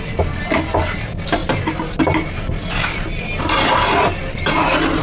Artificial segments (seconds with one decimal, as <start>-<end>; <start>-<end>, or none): none